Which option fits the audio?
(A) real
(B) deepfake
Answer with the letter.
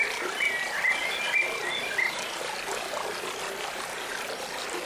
A